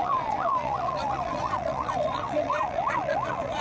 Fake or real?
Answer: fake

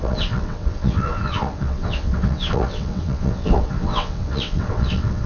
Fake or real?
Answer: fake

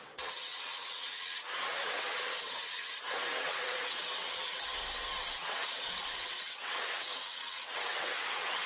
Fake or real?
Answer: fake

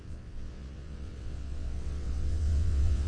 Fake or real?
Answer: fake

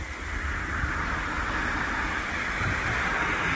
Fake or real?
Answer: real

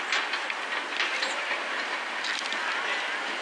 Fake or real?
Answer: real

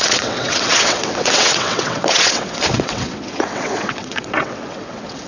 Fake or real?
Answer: fake